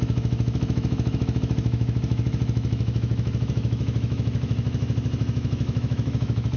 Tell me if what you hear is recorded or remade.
remade